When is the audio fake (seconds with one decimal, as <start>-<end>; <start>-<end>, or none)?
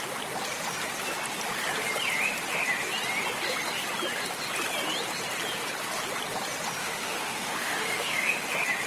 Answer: 6.8-8.4